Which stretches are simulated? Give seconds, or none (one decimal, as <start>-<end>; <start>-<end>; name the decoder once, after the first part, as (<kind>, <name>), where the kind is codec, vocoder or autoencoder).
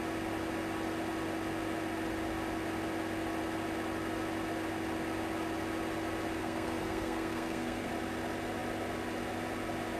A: 6.4-7.9 (codec, SNAC)